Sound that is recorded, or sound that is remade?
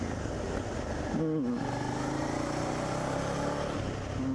recorded